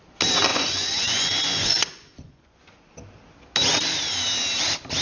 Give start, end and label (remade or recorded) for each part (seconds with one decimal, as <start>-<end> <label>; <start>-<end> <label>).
0.0-0.5 recorded; 0.5-2.6 remade; 2.6-5.0 recorded